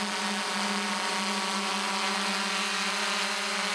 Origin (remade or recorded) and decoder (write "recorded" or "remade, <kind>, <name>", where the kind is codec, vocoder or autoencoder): recorded